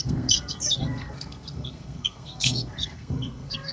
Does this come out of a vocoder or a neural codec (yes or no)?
yes